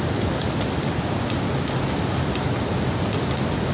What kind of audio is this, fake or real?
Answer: real